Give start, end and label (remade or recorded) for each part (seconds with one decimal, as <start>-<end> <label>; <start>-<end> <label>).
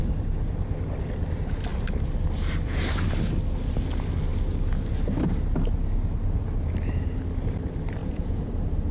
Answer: 0.0-8.0 recorded; 8.0-8.5 remade; 8.5-8.9 recorded